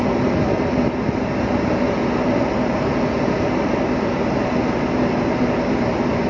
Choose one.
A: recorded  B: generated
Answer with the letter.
A